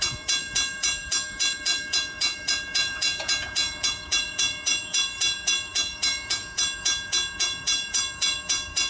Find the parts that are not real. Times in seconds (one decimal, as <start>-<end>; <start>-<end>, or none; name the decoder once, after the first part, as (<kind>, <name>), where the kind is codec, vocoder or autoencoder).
0.0-8.9 (vocoder, Vocos)